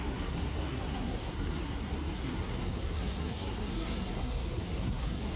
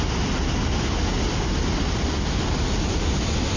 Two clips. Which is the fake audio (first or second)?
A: first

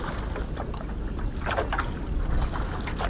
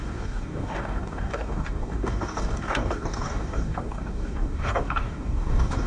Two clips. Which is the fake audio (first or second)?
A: second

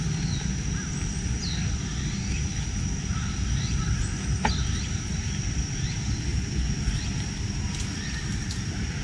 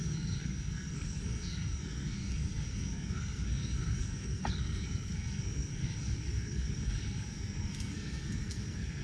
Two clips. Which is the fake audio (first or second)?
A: second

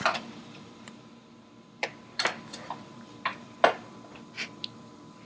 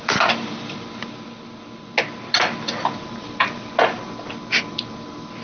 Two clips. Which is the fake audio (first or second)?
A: first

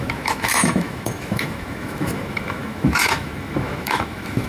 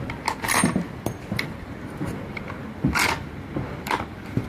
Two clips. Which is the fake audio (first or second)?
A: first